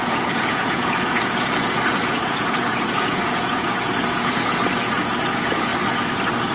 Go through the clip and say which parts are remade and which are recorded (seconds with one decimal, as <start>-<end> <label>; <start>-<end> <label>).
0.0-5.7 remade; 5.7-6.5 recorded